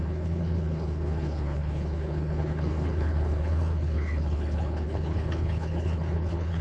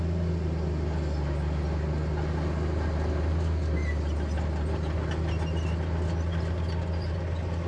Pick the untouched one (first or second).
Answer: second